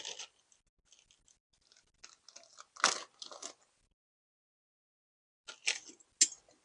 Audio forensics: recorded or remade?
recorded